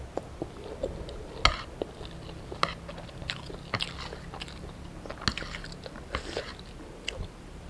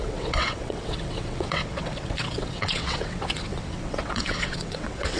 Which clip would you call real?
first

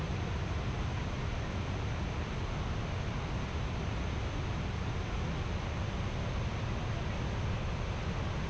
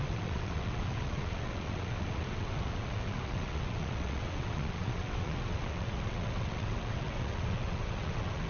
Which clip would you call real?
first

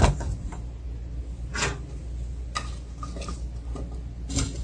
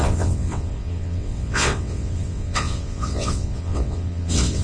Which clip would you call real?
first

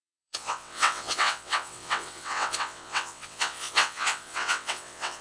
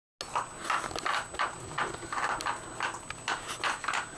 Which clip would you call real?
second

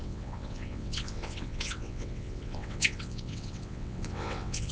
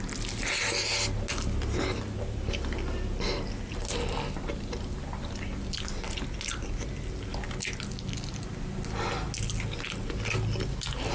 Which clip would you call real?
second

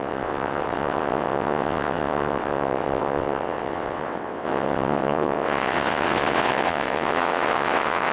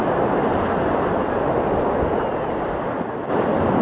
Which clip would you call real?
second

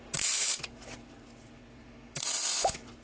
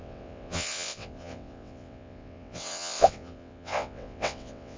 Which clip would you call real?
first